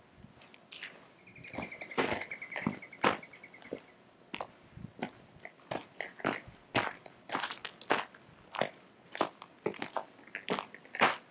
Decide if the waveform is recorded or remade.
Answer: recorded